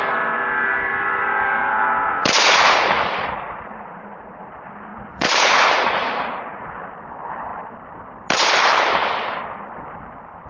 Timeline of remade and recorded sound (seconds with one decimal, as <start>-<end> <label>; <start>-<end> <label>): 0.0-2.1 recorded; 2.1-4.5 remade; 4.5-4.9 recorded; 4.9-6.9 remade; 6.9-10.5 recorded